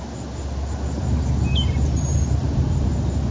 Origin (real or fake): real